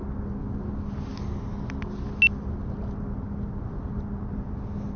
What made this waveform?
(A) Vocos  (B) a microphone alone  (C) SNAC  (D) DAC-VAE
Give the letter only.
B